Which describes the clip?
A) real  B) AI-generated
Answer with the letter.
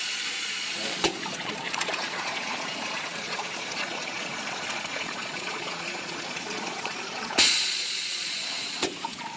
B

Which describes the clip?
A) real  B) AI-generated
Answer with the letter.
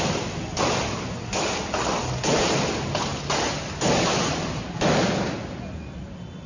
A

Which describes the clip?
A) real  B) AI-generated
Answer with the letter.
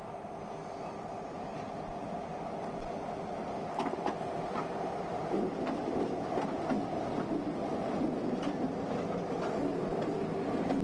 A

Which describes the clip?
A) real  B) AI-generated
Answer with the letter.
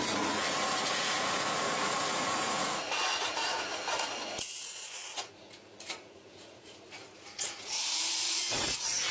B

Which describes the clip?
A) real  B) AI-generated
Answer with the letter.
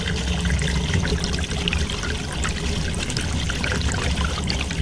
A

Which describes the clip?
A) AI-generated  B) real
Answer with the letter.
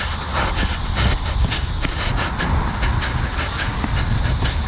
B